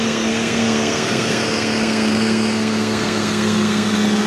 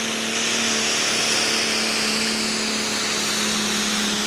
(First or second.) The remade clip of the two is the first